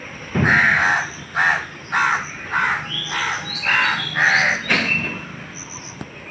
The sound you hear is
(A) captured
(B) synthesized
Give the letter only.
A